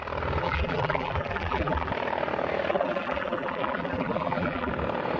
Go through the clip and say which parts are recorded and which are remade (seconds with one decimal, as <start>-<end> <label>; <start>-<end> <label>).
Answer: 0.0-0.4 recorded; 0.4-1.9 remade; 1.9-2.7 recorded; 2.7-4.7 remade; 4.7-5.2 recorded